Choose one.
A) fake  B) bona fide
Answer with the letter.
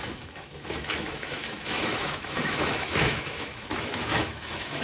A